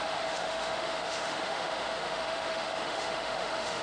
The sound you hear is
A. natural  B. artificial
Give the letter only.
B